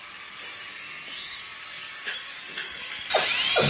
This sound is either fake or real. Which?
real